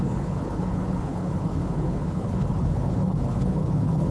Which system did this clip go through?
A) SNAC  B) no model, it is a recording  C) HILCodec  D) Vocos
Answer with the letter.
C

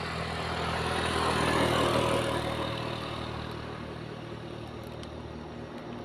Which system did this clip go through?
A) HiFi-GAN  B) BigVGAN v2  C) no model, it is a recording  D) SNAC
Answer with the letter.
C